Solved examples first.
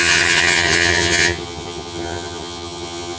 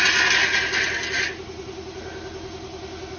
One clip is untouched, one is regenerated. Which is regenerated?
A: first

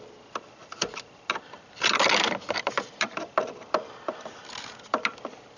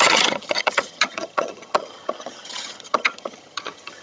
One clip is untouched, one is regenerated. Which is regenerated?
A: second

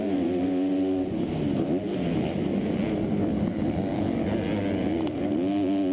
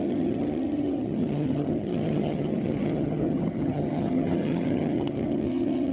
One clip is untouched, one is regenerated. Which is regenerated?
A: second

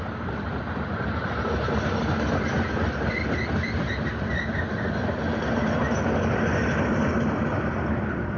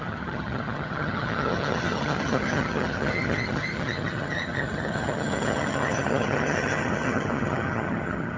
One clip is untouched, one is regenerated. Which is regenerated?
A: second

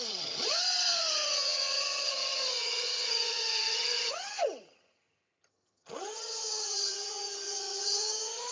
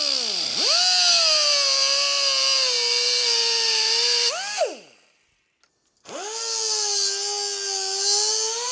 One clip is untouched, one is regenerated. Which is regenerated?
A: first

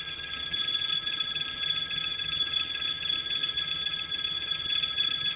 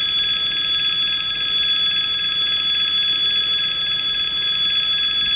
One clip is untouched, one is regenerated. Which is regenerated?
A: first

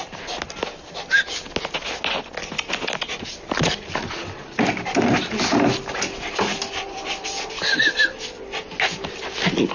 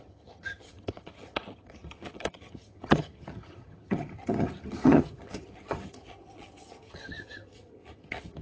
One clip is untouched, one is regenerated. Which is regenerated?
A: second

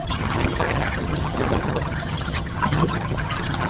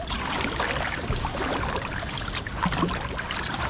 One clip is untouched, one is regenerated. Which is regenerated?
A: first